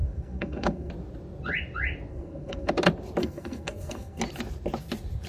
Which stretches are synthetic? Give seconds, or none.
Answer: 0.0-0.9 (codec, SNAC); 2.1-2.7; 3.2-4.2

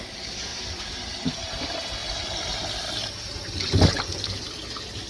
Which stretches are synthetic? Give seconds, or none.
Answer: none

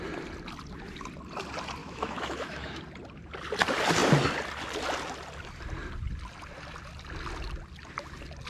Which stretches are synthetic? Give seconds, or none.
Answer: 1.8-2.8 (autoencoder, DAC-VAE)

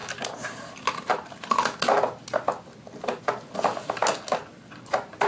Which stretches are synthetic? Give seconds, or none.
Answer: none